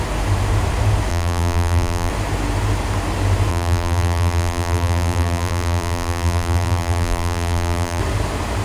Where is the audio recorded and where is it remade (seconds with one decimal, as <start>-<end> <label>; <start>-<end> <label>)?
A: 0.0-1.1 recorded; 1.1-2.1 remade; 2.1-3.5 recorded; 3.5-8.0 remade; 8.0-8.6 recorded